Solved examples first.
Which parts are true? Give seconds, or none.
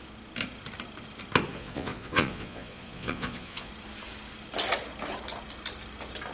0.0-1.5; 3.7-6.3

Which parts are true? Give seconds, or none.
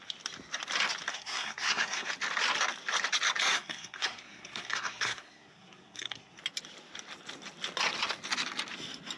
0.0-1.1; 2.1-3.5; 6.4-9.2